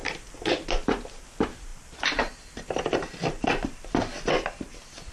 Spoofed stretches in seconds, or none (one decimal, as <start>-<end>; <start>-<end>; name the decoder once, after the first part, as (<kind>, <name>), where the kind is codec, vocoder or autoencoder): 0.0-0.5 (vocoder, BigVGAN v2); 1.7-3.7